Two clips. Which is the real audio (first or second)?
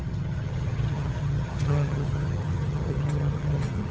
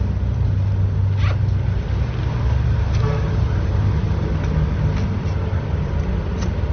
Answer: second